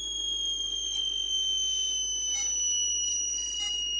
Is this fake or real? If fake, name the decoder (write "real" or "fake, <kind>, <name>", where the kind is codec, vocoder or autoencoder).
real